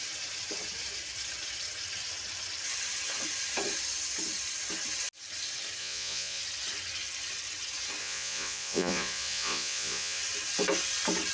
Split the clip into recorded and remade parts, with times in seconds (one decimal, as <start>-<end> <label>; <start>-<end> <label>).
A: 0.0-5.8 recorded; 5.8-6.4 remade; 6.4-8.0 recorded; 8.0-10.2 remade; 10.2-11.3 recorded